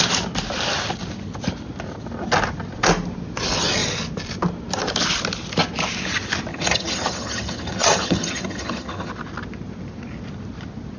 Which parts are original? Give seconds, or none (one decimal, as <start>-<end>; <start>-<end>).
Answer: 0.0-6.5; 9.1-11.0